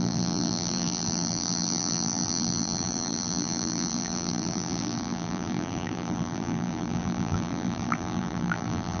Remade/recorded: remade